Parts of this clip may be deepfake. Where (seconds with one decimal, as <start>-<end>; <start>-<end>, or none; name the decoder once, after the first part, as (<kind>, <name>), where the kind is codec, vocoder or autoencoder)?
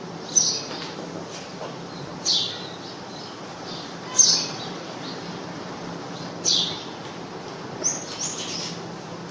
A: 3.5-6.3 (vocoder, BigVGAN v2)